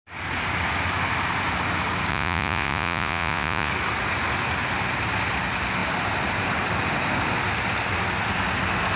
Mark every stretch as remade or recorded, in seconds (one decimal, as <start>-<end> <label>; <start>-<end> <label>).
0.0-2.1 recorded; 2.1-3.7 remade; 3.7-9.0 recorded